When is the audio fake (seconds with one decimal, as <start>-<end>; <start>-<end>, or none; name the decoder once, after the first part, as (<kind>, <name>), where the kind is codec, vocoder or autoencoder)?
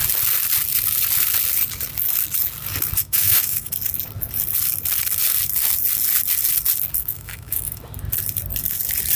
3.0-3.7 (autoencoder, DAC-VAE); 7.0-7.8